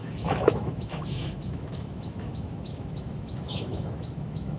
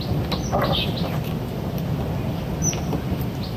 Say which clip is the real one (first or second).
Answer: second